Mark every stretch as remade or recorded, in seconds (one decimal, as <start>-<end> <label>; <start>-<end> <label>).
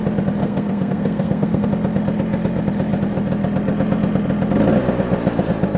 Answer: 0.0-0.4 recorded; 0.4-1.7 remade; 1.7-5.8 recorded